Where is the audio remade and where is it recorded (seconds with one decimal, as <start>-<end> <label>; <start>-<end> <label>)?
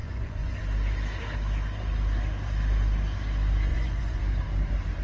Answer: 0.0-0.6 remade; 0.6-3.7 recorded; 3.7-4.2 remade; 4.2-5.0 recorded